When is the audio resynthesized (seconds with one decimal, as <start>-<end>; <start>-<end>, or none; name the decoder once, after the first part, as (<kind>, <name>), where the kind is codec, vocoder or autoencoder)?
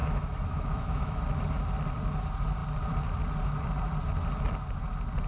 0.0-1.2 (autoencoder, DAC-VAE)